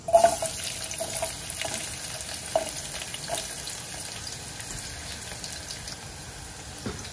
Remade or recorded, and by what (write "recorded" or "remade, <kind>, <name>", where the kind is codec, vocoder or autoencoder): recorded